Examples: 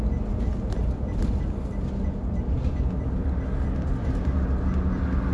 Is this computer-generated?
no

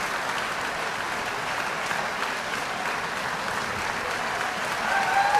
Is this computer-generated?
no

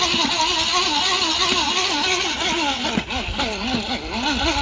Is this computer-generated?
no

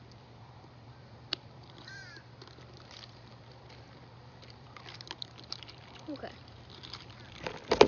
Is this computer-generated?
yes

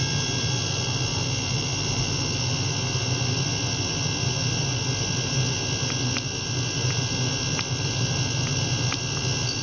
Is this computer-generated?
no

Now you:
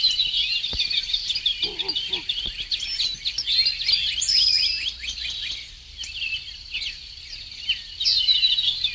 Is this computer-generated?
no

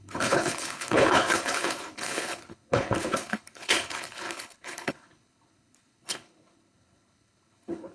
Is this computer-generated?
yes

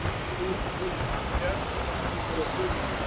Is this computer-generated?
no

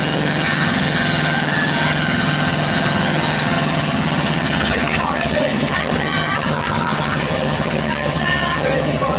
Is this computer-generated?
yes